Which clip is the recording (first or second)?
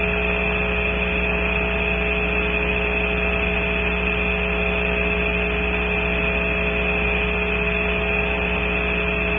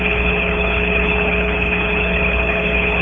first